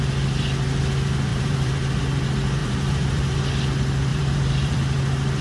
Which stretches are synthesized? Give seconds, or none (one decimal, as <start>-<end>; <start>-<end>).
1.3-2.0; 2.6-3.4; 4.1-4.8